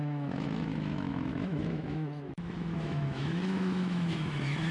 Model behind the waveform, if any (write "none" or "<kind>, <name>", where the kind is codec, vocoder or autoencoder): autoencoder, DAC-VAE